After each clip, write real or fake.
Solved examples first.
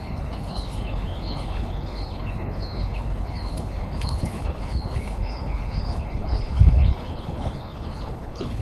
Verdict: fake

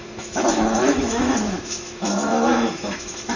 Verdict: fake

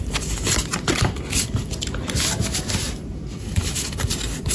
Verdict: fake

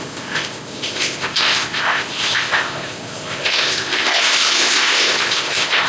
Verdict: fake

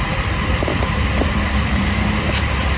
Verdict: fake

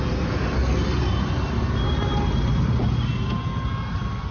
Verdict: real